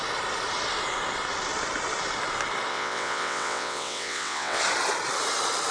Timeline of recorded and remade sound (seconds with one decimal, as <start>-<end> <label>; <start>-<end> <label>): 0.0-2.7 recorded; 2.7-4.6 remade; 4.6-5.7 recorded